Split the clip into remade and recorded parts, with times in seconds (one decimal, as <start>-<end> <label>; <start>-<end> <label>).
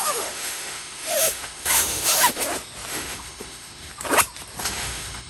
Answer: 0.0-2.4 remade; 2.4-2.9 recorded; 2.9-3.9 remade; 3.9-4.6 recorded; 4.6-5.3 remade